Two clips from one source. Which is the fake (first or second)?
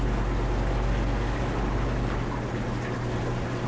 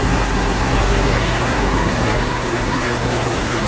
second